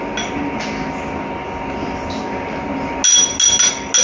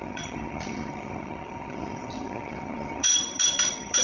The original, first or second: first